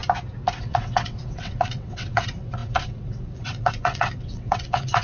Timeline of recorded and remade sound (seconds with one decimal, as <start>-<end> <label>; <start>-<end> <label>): 0.0-0.6 recorded; 0.6-5.0 remade